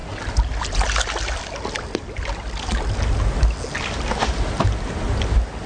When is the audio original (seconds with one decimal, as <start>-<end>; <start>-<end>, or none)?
0.0-5.7